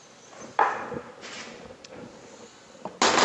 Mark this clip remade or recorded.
recorded